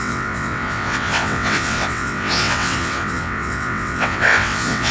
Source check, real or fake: fake